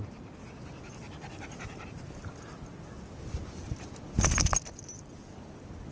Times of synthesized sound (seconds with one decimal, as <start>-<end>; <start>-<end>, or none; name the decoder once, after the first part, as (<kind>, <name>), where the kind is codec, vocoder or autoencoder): none

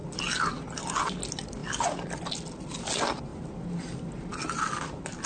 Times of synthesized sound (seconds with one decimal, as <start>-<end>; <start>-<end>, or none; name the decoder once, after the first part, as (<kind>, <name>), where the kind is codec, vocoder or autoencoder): none

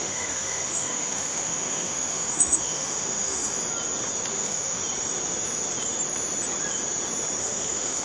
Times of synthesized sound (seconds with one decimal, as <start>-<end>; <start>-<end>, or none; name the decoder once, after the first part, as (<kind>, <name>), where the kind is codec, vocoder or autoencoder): 0.0-3.6 (autoencoder, DAC-VAE); 4.3-4.8; 7.4-8.0

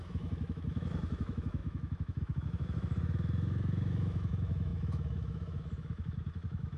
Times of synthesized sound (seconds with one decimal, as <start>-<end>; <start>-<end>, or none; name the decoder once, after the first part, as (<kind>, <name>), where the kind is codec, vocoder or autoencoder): 0.0-6.8 (autoencoder, DAC-VAE)

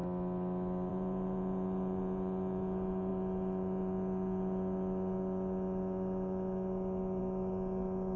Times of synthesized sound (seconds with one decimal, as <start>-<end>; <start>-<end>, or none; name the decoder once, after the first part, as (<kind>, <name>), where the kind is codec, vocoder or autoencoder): 0.9-8.2 (vocoder, Vocos)